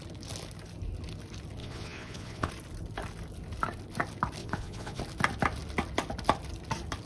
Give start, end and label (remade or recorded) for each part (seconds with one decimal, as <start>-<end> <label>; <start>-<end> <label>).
0.0-1.6 recorded; 1.6-2.5 remade; 2.5-4.4 recorded; 4.4-5.0 remade; 5.0-7.1 recorded